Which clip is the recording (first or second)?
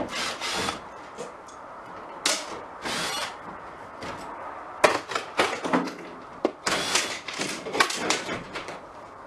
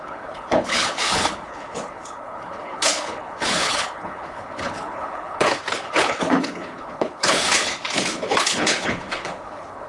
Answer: first